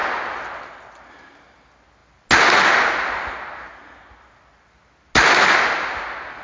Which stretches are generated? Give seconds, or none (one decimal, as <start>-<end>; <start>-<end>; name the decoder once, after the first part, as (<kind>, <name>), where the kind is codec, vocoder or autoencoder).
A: none